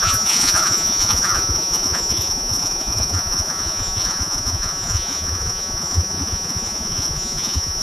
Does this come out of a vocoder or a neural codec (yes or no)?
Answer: yes